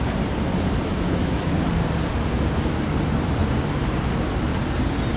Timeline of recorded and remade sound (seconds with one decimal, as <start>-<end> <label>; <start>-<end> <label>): 0.0-0.9 recorded; 0.9-1.5 remade; 1.5-5.2 recorded

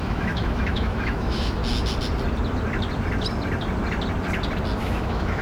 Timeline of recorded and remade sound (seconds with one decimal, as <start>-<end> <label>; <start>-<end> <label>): 0.0-1.6 remade; 1.6-4.8 recorded; 4.8-5.4 remade

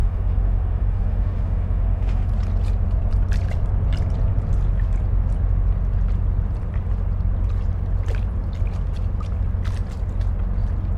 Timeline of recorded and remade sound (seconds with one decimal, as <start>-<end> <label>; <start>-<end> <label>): 0.0-2.3 remade; 2.3-11.0 recorded

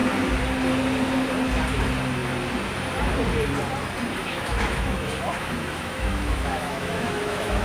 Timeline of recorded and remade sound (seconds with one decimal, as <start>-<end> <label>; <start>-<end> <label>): 0.0-4.2 recorded; 4.2-7.6 remade

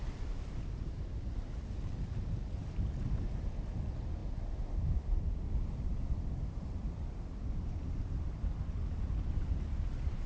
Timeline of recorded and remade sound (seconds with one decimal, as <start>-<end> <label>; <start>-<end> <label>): 0.0-10.3 recorded

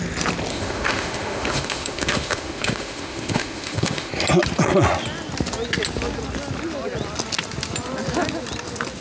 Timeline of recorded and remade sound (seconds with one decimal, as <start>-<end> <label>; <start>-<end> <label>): 0.0-0.5 recorded; 0.5-4.1 remade; 4.1-9.0 recorded